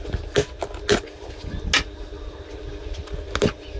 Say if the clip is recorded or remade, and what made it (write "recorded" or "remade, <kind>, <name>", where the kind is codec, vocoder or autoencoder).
recorded